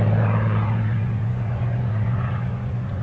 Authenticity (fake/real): fake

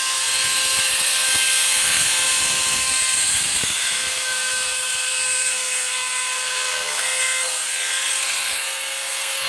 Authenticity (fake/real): fake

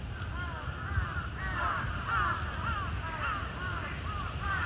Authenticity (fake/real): fake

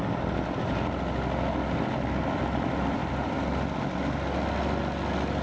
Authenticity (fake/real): real